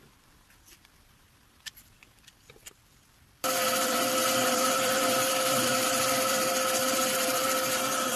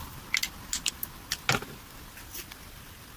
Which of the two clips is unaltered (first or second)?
second